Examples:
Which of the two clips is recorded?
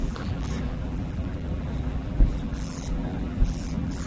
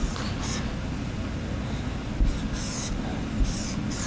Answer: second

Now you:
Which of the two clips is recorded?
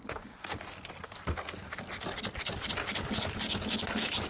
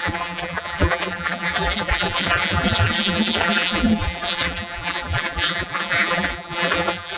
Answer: first